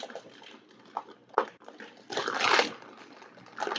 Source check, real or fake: real